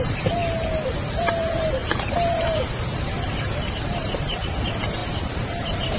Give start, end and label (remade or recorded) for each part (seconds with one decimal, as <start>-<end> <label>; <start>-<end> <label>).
0.0-0.4 remade; 0.4-0.9 recorded; 0.9-6.0 remade

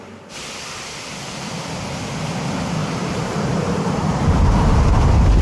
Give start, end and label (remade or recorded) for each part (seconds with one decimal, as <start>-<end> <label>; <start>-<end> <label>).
0.0-2.8 recorded; 2.8-5.4 remade

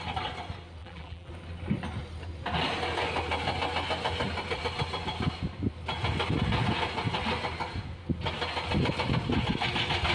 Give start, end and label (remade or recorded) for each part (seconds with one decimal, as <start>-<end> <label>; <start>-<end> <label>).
0.0-0.8 recorded; 0.8-1.3 remade; 1.3-10.1 recorded

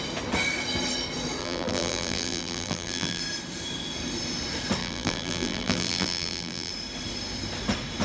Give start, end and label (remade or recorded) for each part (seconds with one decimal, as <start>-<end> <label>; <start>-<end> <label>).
0.0-1.4 recorded; 1.4-3.2 remade; 3.2-4.8 recorded; 4.8-6.7 remade; 6.7-8.0 recorded

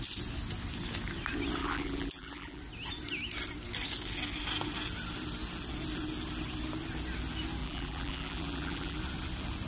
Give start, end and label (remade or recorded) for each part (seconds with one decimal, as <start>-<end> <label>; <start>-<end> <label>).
0.0-1.6 recorded; 1.6-2.6 remade; 2.6-7.6 recorded; 7.6-9.0 remade; 9.0-9.7 recorded

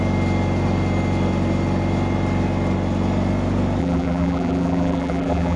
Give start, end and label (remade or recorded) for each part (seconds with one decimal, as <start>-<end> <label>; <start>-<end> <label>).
0.0-3.8 recorded; 3.8-5.6 remade